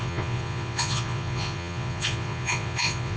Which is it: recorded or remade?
remade